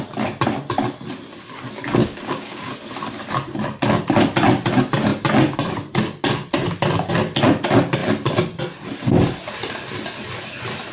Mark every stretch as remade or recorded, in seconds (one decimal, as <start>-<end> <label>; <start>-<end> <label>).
0.0-2.0 recorded; 2.0-2.7 remade; 2.7-10.9 recorded